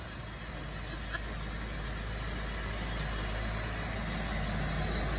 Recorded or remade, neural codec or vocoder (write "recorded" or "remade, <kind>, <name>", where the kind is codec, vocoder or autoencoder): recorded